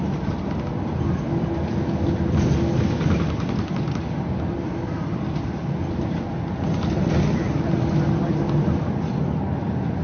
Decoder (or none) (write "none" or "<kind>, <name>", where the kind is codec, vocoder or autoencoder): none